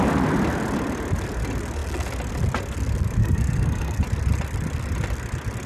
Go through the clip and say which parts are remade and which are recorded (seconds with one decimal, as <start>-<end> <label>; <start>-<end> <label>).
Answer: 0.0-3.2 recorded; 3.2-4.0 remade; 4.0-5.7 recorded